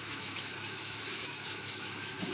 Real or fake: fake